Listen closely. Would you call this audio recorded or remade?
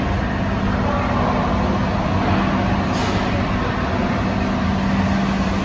recorded